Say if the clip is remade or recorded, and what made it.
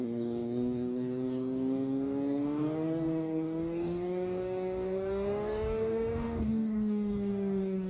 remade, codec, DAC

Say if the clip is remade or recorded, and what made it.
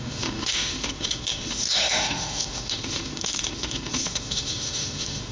remade, autoencoder, DAC-VAE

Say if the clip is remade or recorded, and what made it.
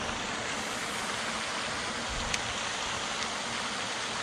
recorded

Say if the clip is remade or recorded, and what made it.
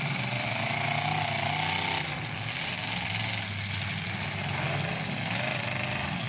recorded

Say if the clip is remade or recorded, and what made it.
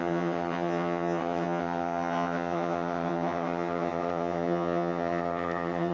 remade, vocoder, HiFi-GAN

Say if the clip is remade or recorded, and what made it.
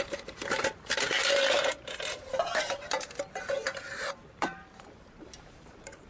remade, vocoder, BigVGAN v2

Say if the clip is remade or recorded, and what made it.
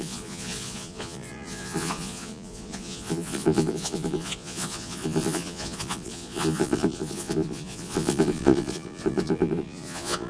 remade, vocoder, Vocos